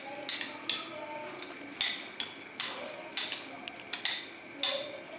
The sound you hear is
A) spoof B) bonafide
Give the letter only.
B